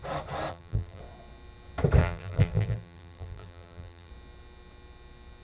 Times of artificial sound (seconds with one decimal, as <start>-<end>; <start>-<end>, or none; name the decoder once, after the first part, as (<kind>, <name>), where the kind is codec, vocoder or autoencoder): 0.5-1.0 (vocoder, BigVGAN v2); 2.0-4.1